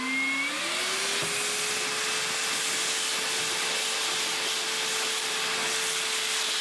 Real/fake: real